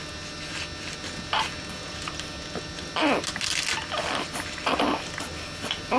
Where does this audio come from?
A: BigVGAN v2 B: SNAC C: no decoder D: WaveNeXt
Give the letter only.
C